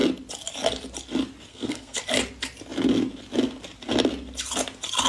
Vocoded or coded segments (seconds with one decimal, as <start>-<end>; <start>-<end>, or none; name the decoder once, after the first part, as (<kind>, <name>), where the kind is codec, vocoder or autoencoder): 1.5-2.0 (codec, SNAC)